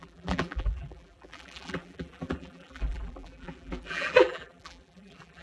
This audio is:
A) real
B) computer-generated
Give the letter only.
B